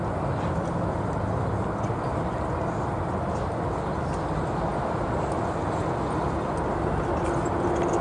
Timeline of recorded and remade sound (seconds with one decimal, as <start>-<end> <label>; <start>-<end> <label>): 0.0-8.0 recorded